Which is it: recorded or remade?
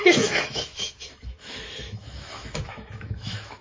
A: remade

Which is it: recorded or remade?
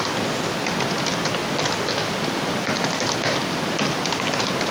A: recorded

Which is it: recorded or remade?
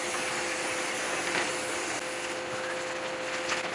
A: recorded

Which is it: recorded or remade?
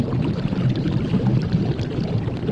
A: recorded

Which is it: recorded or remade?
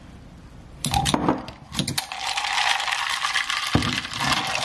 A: recorded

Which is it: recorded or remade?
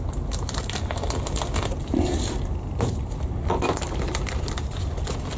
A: recorded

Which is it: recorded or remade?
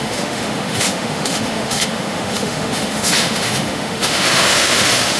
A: remade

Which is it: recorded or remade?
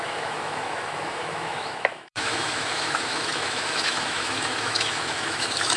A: remade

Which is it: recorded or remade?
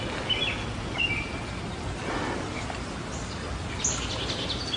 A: recorded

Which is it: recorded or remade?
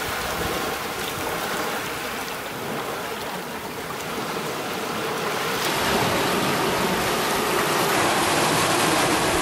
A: recorded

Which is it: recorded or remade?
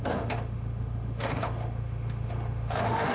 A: remade